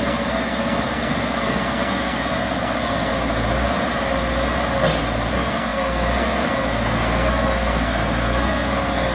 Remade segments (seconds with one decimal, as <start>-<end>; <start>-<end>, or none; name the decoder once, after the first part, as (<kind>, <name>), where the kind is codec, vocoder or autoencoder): 0.0-3.1 (codec, SNAC); 5.3-9.1